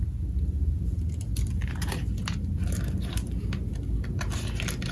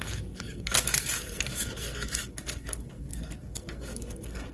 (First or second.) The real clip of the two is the first